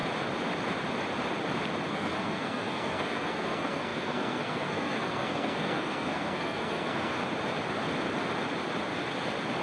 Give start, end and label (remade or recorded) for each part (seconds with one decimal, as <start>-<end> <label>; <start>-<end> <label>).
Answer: 0.0-1.9 recorded; 1.9-7.2 remade; 7.2-9.6 recorded

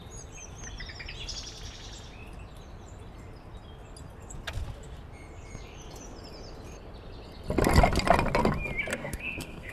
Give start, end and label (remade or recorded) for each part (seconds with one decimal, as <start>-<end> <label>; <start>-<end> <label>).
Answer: 0.0-8.9 recorded; 8.9-9.7 remade

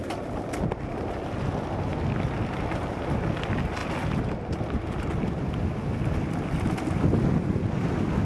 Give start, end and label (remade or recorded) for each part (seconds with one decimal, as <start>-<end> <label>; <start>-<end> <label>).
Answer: 0.0-8.2 recorded

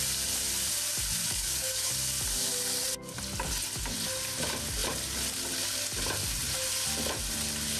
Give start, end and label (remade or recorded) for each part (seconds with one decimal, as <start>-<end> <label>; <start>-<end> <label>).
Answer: 0.0-1.2 recorded; 1.2-1.9 remade; 1.9-7.8 recorded

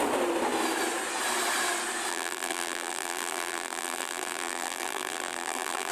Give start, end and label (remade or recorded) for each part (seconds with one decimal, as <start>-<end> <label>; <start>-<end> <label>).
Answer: 0.0-2.1 recorded; 2.1-5.9 remade

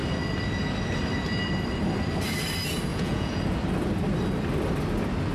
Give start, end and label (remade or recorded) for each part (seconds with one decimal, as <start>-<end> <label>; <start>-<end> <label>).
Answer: 0.0-2.9 recorded; 2.9-3.4 remade; 3.4-5.3 recorded